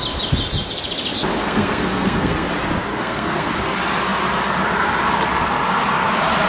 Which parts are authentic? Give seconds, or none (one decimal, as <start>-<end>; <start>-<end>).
0.0-1.3; 2.5-2.9; 3.5-6.5